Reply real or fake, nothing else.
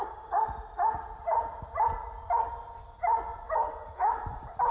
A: real